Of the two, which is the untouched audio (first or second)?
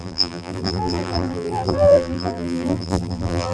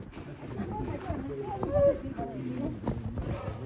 second